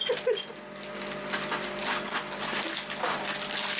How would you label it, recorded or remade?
recorded